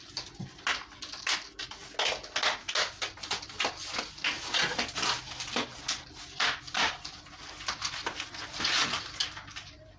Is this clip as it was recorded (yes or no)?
yes